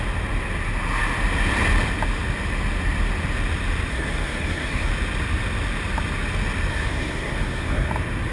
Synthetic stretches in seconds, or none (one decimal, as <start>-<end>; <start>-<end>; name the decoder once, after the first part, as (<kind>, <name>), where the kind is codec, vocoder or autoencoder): 3.9-4.9 (codec, SNAC); 6.7-7.9